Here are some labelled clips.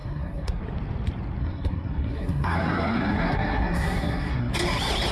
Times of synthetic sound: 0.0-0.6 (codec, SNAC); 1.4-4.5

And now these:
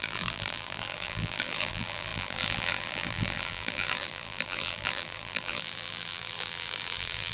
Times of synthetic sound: 0.0-7.3 (vocoder, BigVGAN v2)

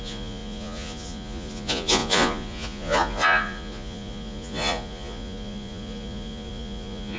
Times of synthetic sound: 0.0-7.2 (vocoder, Vocos)